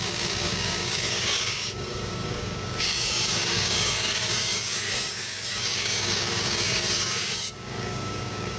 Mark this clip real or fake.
fake